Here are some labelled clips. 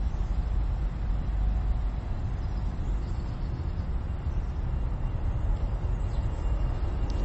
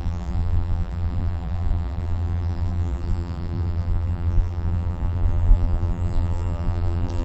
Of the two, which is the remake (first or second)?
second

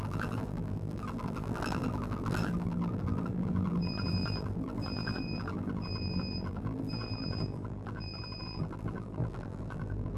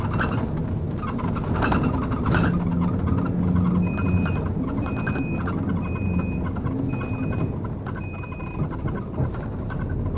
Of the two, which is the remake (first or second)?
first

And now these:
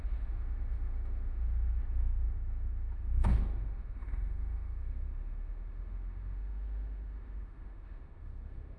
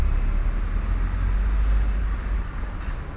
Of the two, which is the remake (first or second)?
first